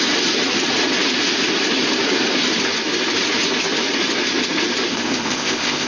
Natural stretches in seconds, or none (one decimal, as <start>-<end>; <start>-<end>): 0.0-4.9